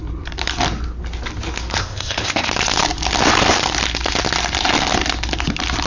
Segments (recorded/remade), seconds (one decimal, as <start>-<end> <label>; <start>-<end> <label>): 0.0-1.8 recorded; 1.8-2.5 remade; 2.5-5.9 recorded